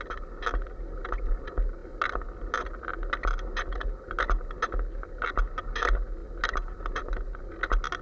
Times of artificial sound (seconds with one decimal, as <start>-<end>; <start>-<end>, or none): none